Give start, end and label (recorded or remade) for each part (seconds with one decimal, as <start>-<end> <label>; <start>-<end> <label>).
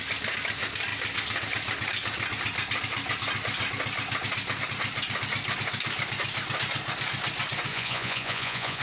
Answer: 0.0-7.7 recorded; 7.7-8.8 remade